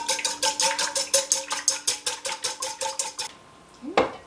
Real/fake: real